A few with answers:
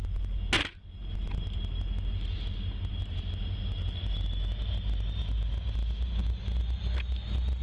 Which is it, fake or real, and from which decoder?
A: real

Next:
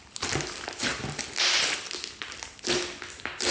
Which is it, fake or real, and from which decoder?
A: real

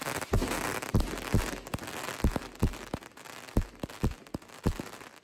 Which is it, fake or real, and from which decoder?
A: real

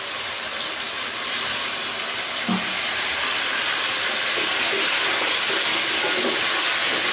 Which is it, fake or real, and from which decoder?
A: real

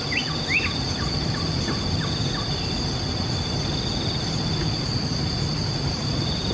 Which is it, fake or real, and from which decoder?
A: real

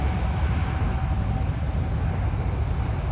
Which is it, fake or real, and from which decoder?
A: real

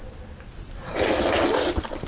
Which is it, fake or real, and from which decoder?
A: real